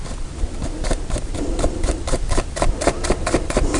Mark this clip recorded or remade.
remade